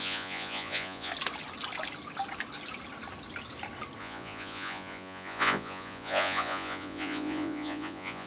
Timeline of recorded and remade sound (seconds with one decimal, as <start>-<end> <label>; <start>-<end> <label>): 0.0-1.1 remade; 1.1-4.0 recorded; 4.0-8.3 remade